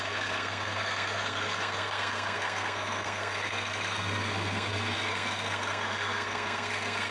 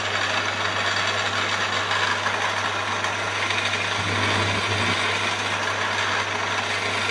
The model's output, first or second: first